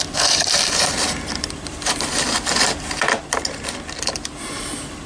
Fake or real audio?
real